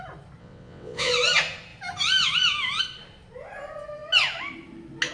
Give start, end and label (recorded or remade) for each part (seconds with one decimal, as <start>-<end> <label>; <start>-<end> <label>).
0.0-0.4 recorded; 0.4-1.1 remade; 1.1-5.1 recorded